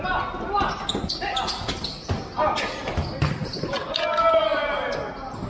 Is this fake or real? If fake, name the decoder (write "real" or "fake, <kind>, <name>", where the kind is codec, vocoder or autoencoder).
real